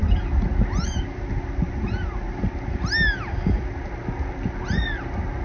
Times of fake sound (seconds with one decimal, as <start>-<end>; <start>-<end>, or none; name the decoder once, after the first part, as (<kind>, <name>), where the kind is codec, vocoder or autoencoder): none